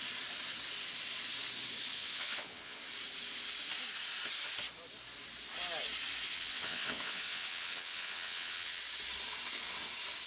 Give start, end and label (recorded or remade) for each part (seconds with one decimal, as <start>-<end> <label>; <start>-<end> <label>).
0.0-1.9 recorded; 1.9-2.8 remade; 2.8-6.3 recorded; 6.3-8.8 remade; 8.8-10.3 recorded